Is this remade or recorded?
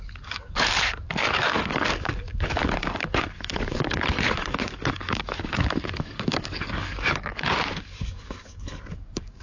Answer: remade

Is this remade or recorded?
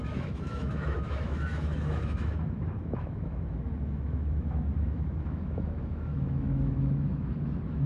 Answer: remade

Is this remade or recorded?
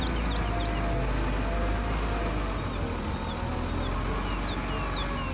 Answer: recorded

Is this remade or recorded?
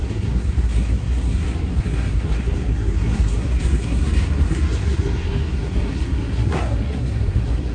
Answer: remade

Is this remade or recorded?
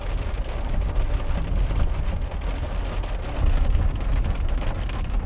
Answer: recorded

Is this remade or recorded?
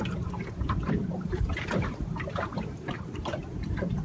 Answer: remade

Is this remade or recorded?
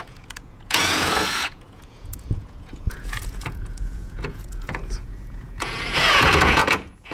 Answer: remade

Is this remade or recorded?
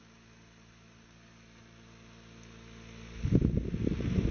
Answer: recorded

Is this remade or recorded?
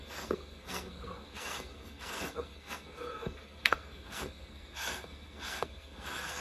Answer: remade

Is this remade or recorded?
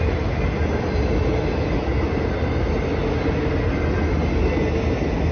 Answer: recorded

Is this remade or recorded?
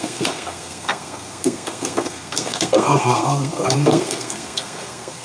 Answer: remade